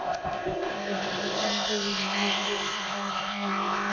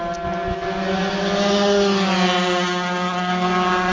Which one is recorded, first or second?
second